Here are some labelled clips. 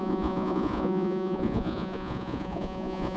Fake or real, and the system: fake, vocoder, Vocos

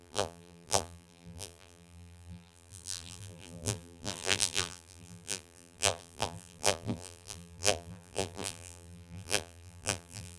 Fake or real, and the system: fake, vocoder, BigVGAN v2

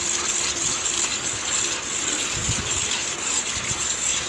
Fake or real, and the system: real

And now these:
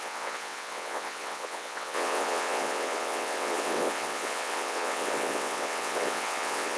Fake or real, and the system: fake, vocoder, WaveNeXt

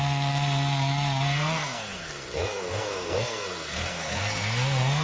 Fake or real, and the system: fake, codec, SNAC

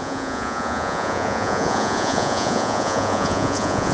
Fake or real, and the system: fake, vocoder, Vocos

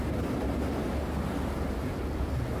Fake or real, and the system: real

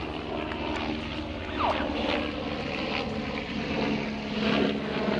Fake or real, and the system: real